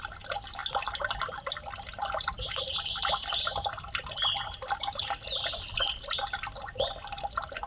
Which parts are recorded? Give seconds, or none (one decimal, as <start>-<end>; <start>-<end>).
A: 0.0-7.7